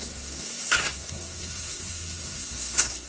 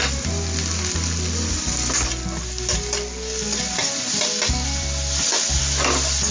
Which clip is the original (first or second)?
second